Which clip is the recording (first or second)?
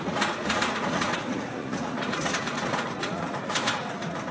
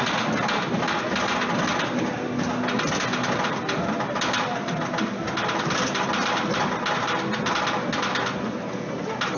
second